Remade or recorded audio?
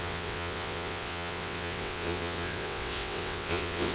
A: remade